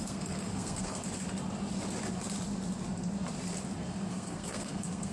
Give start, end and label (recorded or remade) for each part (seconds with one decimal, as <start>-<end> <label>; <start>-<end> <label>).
0.0-1.0 remade; 1.0-4.1 recorded; 4.1-5.1 remade